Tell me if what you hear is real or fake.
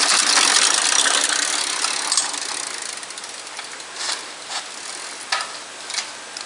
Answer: real